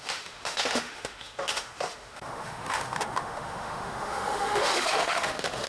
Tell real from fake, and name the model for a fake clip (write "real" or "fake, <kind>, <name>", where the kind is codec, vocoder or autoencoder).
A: fake, autoencoder, DAC-VAE